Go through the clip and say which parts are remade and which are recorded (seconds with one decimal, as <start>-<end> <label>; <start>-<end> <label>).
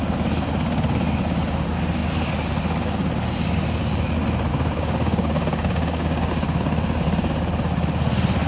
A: 0.0-4.5 recorded; 4.5-6.3 remade; 6.3-8.5 recorded